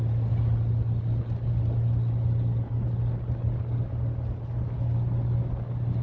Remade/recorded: recorded